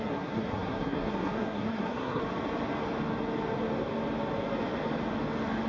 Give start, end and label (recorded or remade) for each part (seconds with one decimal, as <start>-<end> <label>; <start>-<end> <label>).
0.0-2.2 remade; 2.2-5.7 recorded